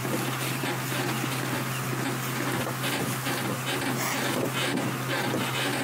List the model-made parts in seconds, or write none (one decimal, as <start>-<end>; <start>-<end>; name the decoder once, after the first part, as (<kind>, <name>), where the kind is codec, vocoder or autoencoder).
none